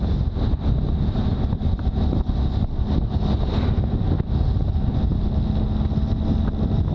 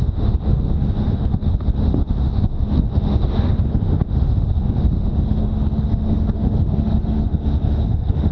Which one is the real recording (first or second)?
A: first